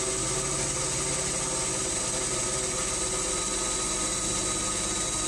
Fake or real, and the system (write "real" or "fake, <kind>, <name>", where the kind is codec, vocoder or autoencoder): real